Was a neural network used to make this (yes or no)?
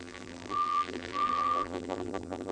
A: yes